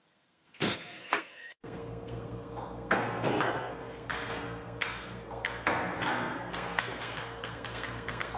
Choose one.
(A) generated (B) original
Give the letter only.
A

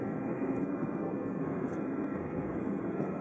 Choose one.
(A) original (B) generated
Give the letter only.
B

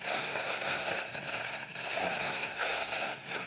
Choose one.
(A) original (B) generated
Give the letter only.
B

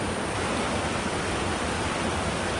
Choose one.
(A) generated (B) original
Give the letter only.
B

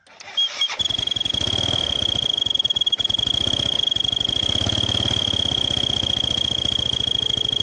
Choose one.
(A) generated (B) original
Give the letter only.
B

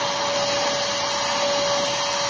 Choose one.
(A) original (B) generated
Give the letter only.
A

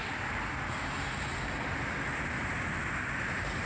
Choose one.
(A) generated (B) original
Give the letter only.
B